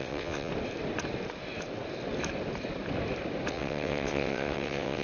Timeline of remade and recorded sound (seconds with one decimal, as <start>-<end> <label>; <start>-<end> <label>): 0.0-0.5 remade; 0.5-3.5 recorded; 3.5-5.0 remade